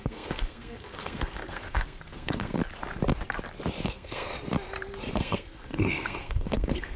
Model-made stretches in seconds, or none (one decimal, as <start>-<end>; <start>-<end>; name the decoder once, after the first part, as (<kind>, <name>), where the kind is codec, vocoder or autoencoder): 0.0-2.6 (codec, SNAC); 3.8-4.3; 5.1-7.0